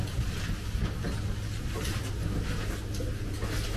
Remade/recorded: recorded